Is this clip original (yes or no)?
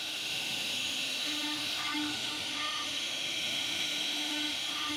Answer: no